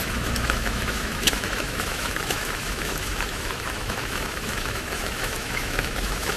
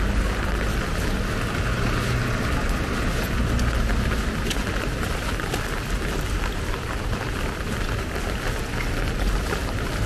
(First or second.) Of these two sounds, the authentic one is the second